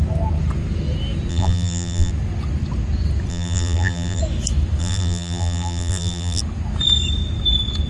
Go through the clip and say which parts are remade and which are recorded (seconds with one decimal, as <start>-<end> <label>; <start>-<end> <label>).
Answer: 0.0-1.3 recorded; 1.3-2.1 remade; 2.1-3.3 recorded; 3.3-4.2 remade; 4.2-4.8 recorded; 4.8-6.4 remade; 6.4-7.9 recorded